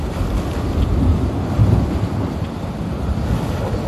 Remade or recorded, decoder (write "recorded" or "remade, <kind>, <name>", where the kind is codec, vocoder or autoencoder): recorded